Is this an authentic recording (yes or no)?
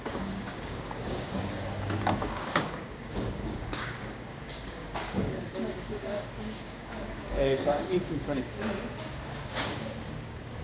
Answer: no